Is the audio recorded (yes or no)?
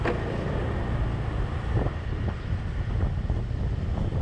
yes